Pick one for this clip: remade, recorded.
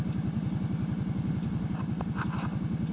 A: recorded